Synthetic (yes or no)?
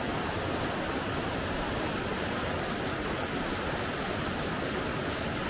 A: no